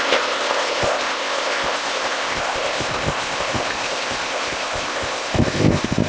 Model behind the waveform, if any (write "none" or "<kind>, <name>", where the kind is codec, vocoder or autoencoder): codec, ZipCodec